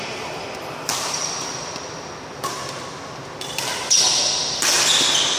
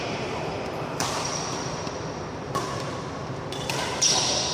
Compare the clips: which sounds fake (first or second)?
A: second